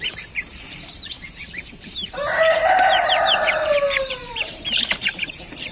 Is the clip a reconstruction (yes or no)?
yes